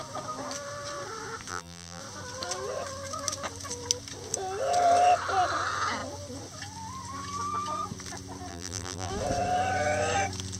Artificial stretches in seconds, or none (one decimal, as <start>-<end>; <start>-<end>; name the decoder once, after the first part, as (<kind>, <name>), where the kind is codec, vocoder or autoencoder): 1.5-2.0 (vocoder, BigVGAN v2); 8.5-9.1

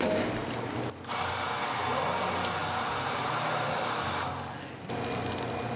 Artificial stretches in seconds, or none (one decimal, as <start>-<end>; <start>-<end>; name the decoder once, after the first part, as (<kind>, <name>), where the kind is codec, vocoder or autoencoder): 2.6-4.3 (vocoder, BigVGAN v2)